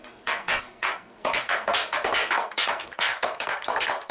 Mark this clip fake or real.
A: fake